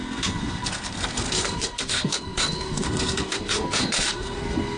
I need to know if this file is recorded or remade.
remade